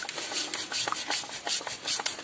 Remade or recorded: recorded